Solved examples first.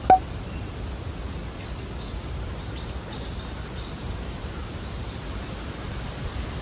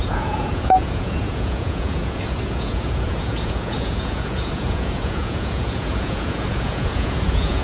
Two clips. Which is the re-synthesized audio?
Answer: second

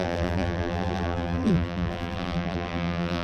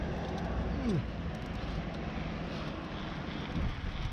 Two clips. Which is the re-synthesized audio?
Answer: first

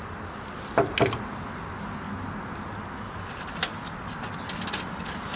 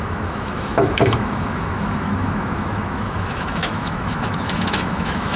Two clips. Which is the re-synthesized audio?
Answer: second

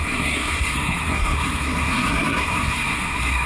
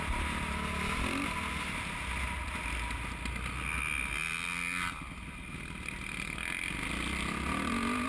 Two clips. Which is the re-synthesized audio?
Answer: first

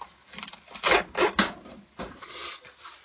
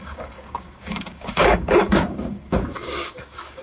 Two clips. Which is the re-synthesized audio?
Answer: second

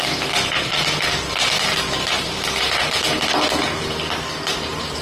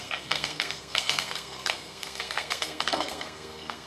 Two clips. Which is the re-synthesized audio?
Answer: second